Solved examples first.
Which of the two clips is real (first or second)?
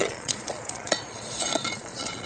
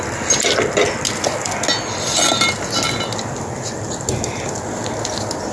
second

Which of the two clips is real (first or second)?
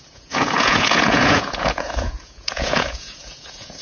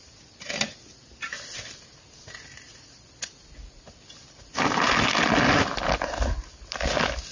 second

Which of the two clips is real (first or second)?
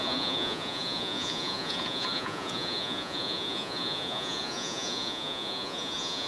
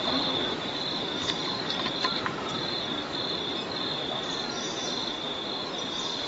second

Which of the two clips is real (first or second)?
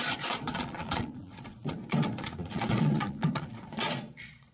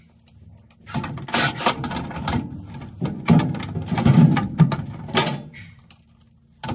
second